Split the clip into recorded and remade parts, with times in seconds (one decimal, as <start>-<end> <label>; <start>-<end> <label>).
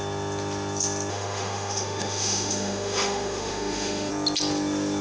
0.0-1.1 recorded; 1.1-4.1 remade; 4.1-5.0 recorded